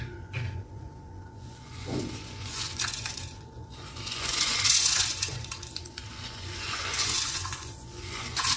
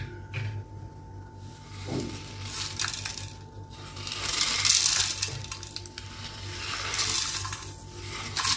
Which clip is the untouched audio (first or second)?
second